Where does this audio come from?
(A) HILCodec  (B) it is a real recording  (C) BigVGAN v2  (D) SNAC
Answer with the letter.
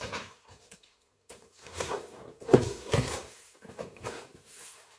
D